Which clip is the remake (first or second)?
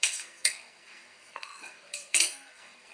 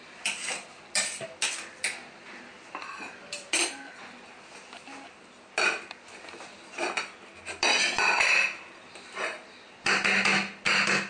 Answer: first